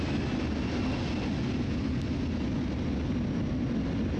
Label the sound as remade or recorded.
recorded